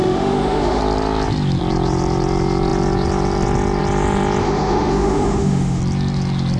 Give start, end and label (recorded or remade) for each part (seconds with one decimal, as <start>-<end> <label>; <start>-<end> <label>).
0.0-0.8 remade; 0.8-4.4 recorded; 4.4-5.8 remade; 5.8-6.6 recorded